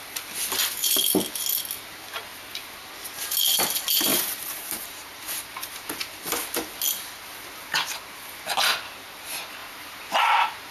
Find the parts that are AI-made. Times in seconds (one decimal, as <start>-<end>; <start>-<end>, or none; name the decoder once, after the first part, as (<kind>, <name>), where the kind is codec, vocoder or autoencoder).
4.1-6.2 (vocoder, BigVGAN v2); 9.6-10.7